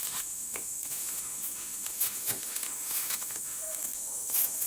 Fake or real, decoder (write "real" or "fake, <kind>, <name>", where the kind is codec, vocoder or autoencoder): fake, autoencoder, DAC-VAE